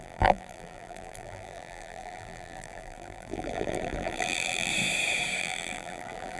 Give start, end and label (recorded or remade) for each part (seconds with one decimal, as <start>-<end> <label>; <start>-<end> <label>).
0.0-4.7 remade; 4.7-5.4 recorded; 5.4-6.4 remade